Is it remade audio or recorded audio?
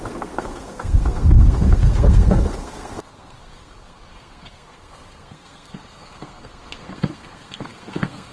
remade